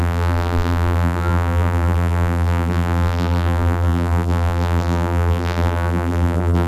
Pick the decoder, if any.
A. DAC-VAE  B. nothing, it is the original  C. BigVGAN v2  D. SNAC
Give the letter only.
C